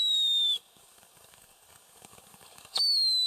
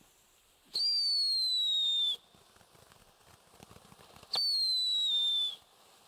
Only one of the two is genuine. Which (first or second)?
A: second